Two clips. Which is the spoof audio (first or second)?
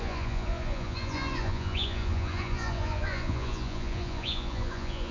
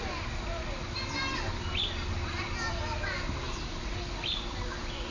first